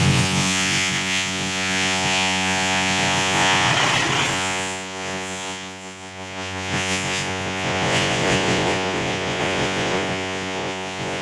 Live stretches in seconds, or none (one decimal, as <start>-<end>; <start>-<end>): 3.7-4.3